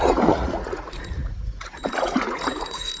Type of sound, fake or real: fake